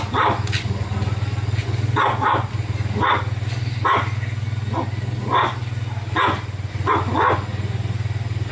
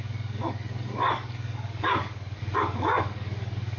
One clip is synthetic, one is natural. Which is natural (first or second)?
first